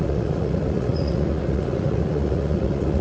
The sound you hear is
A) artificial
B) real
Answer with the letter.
A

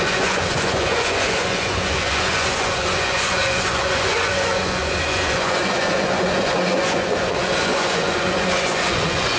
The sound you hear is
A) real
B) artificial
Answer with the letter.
B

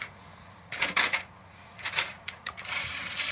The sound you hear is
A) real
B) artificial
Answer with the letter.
B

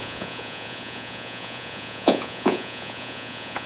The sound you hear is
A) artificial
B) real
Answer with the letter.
A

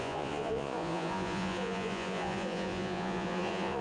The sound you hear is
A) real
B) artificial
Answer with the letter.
B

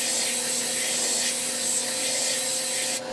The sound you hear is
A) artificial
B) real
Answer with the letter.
B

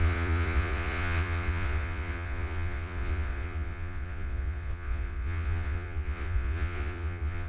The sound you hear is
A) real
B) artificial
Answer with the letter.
B